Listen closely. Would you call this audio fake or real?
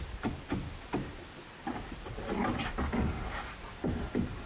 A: real